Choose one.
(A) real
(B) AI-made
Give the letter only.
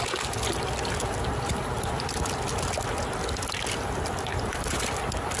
A